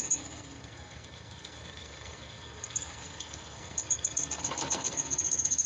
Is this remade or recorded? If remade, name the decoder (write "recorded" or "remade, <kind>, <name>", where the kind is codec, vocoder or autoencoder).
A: remade, codec, SNAC